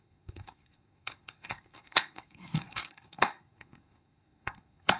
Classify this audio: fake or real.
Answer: fake